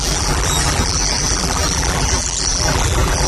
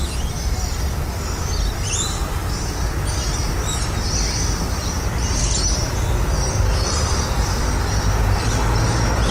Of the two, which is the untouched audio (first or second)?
second